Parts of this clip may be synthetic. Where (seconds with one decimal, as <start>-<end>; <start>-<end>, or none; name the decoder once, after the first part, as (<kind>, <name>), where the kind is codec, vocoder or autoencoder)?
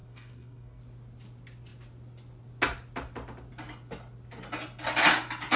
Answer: 0.0-0.8 (codec, SNAC)